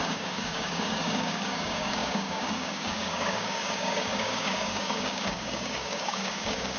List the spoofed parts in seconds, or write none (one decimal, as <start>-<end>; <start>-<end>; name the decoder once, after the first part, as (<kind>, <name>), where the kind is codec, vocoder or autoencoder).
0.0-6.8 (codec, DAC)